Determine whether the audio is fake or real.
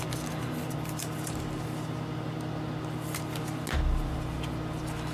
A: real